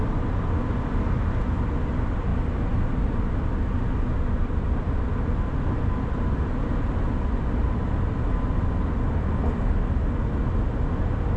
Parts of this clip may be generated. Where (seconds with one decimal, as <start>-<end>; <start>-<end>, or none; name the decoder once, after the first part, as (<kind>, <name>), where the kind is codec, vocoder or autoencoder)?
none